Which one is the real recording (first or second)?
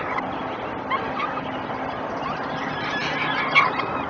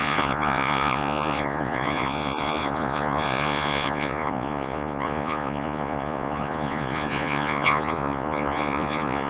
first